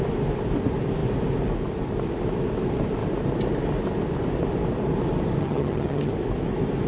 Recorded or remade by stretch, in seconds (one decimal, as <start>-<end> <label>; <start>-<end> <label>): 0.0-5.4 recorded; 5.4-6.1 remade; 6.1-6.9 recorded